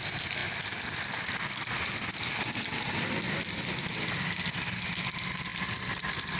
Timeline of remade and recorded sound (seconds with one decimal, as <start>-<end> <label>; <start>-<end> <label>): 0.0-6.4 recorded